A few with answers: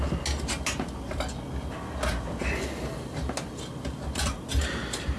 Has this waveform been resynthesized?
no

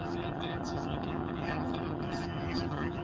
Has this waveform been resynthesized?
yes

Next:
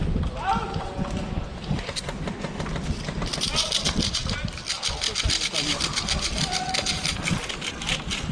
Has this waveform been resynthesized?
no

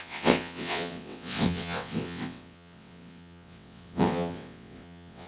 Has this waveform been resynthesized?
yes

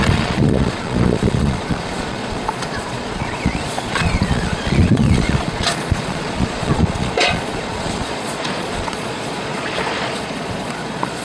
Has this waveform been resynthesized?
yes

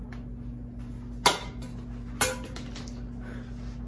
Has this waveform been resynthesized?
no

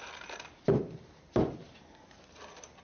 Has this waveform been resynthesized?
no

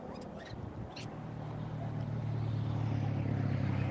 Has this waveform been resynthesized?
no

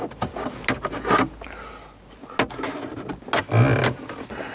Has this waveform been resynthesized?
no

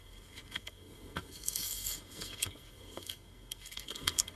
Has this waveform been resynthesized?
yes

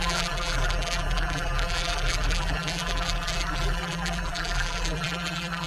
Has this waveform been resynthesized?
yes